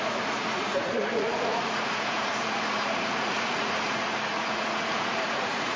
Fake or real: fake